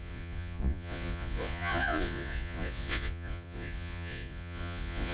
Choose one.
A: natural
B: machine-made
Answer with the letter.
B